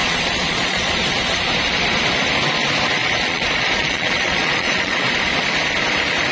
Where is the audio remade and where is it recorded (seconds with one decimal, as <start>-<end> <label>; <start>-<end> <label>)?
0.0-0.9 remade; 0.9-3.0 recorded; 3.0-5.1 remade; 5.1-6.3 recorded